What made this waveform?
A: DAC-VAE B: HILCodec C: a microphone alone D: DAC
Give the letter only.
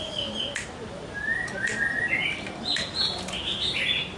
C